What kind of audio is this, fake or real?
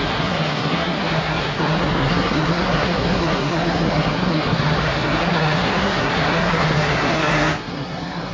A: fake